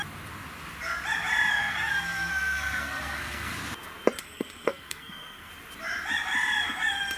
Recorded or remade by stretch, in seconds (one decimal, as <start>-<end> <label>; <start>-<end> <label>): 0.0-1.5 recorded; 1.5-3.5 remade; 3.5-4.2 recorded; 4.2-5.5 remade; 5.5-7.2 recorded